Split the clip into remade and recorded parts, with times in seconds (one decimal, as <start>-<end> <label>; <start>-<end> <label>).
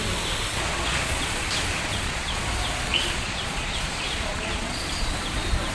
0.0-0.5 recorded; 0.5-1.4 remade; 1.4-1.8 recorded; 1.8-2.4 remade; 2.4-2.9 recorded; 2.9-4.9 remade; 4.9-5.7 recorded